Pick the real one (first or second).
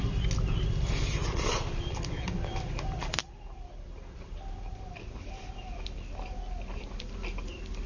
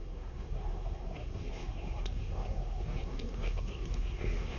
first